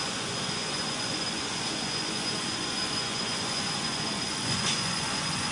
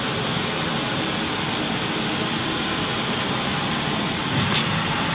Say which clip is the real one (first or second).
second